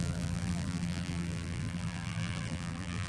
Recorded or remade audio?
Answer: remade